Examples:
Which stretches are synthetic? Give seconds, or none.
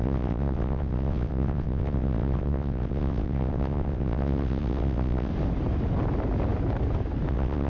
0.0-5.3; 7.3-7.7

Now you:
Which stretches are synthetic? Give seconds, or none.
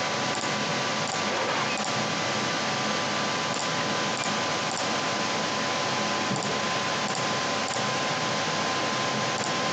4.5-5.5; 6.5-8.4